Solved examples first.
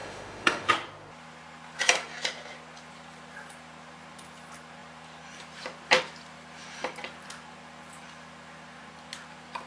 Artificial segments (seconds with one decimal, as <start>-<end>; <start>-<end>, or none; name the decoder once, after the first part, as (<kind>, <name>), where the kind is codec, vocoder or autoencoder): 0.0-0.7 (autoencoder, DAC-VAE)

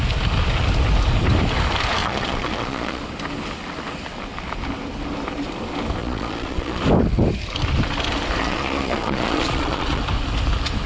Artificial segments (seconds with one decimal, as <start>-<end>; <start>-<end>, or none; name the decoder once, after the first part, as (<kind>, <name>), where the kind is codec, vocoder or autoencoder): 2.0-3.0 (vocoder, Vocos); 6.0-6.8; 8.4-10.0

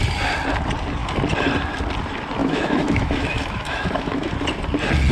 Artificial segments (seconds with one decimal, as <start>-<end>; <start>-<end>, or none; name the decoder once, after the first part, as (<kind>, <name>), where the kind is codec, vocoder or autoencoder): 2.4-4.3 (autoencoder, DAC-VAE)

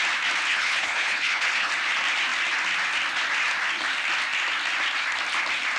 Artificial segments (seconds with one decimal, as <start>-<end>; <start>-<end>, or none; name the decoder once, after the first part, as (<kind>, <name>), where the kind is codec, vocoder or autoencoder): 0.5-1.7 (codec, HILCodec)